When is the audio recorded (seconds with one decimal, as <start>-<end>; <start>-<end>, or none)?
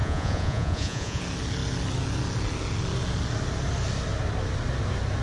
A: 1.2-5.2